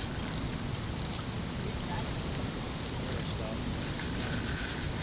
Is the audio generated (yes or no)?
no